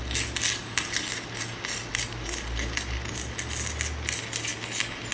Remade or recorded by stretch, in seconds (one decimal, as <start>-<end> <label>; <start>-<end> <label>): 0.0-5.1 recorded